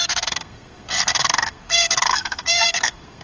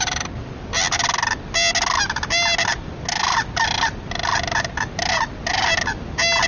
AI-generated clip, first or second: first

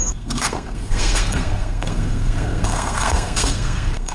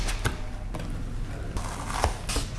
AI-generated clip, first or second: first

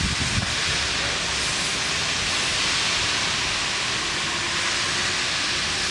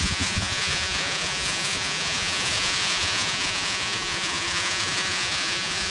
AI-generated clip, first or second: second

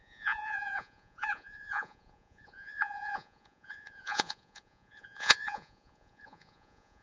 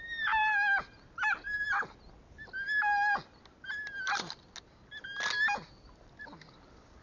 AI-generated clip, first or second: first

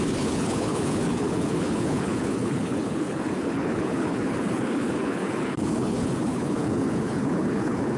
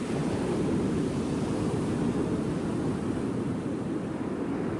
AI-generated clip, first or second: first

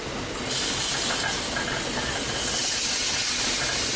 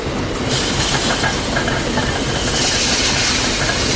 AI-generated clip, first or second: second